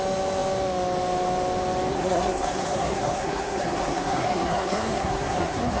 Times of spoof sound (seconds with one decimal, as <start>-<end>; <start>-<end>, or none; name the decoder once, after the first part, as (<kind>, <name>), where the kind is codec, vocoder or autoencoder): 1.9-5.8 (codec, SNAC)